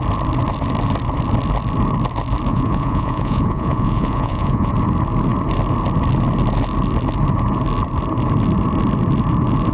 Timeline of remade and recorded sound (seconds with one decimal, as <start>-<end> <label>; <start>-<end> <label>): 0.0-2.5 recorded; 2.5-4.7 remade; 4.7-9.7 recorded